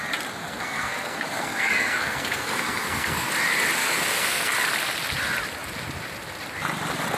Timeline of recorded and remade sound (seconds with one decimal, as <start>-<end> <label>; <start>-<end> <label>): 0.0-0.4 recorded; 0.4-3.3 remade; 3.3-3.8 recorded; 3.8-4.5 remade; 4.5-7.2 recorded